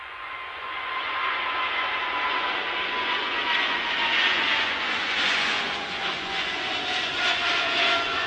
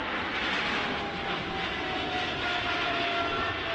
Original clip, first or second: second